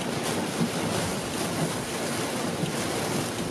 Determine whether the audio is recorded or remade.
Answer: recorded